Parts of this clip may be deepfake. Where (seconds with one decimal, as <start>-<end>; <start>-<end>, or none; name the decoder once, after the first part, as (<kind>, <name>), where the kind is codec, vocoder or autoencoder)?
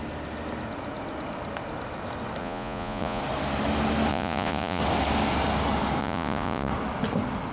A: 2.4-3.2 (vocoder, Vocos); 4.1-4.8; 6.0-6.7